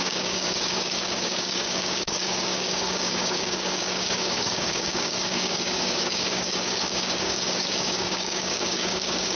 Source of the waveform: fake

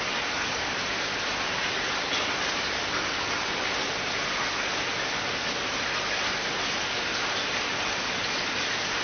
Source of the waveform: real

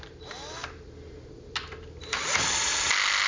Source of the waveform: real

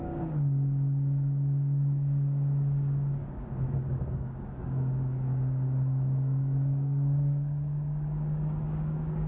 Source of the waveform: fake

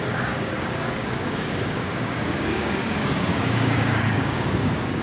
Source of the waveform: fake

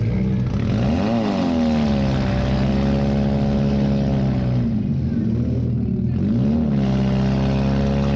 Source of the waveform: real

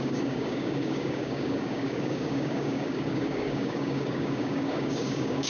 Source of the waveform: fake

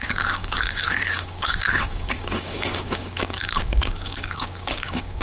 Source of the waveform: fake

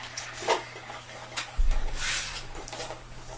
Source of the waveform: fake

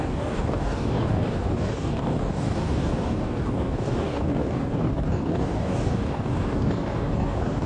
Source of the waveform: fake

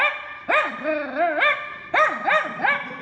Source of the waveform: real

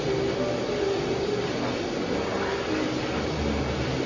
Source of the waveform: real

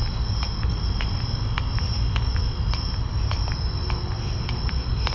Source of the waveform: real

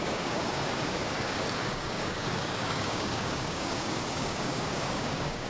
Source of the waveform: fake